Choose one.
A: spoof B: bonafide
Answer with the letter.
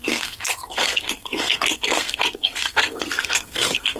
A